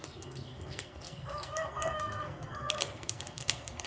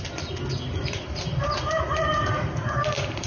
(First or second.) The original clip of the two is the second